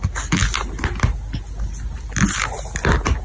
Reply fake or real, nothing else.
real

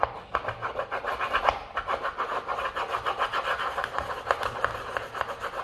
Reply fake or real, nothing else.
real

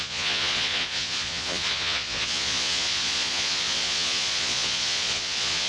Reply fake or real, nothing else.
fake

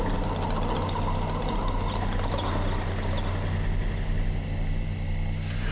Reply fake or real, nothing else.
real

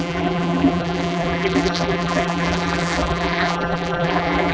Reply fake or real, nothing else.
fake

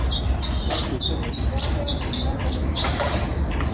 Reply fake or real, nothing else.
real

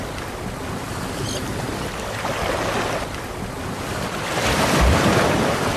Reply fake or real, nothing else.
real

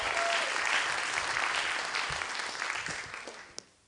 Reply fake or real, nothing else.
real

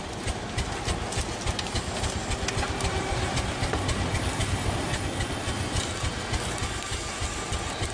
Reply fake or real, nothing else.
real